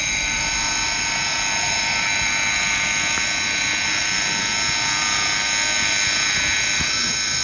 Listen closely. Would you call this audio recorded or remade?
recorded